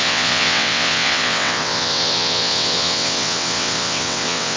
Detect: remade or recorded remade